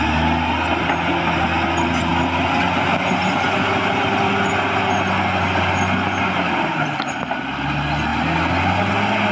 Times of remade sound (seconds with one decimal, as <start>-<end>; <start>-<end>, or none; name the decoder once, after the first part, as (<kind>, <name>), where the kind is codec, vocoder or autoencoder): none